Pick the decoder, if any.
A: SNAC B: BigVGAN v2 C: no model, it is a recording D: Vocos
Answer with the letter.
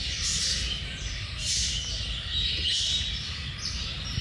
B